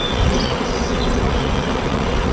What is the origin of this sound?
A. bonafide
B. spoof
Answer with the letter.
B